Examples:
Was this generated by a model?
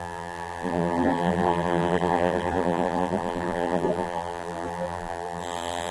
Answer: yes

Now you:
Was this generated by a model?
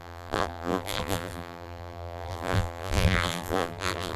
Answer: yes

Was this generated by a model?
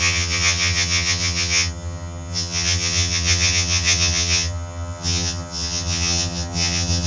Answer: yes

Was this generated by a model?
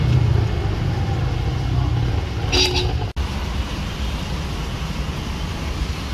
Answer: no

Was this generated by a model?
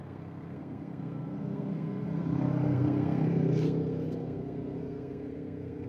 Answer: yes